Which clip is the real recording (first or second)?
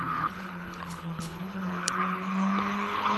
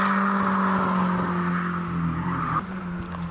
second